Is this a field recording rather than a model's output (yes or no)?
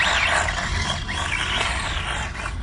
yes